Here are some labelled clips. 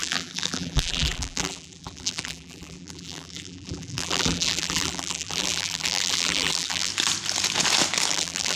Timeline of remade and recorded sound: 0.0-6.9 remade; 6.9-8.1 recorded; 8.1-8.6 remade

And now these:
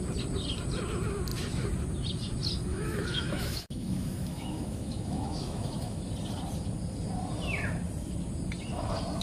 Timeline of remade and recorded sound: 0.0-2.7 recorded; 2.7-6.0 remade; 6.0-9.2 recorded